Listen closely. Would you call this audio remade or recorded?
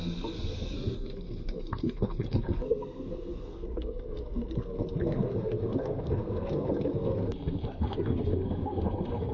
remade